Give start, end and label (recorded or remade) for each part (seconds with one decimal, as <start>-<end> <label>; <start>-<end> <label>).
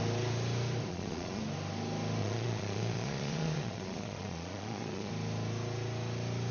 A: 0.0-0.9 recorded; 0.9-1.4 remade; 1.4-2.2 recorded; 2.2-5.1 remade; 5.1-6.5 recorded